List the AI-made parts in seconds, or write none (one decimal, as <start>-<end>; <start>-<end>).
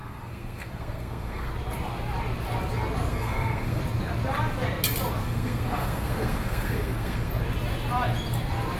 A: 0.0-1.5; 3.1-3.8; 5.2-7.3